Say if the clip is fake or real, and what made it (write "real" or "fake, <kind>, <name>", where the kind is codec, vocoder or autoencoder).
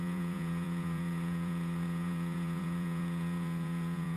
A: fake, vocoder, Vocos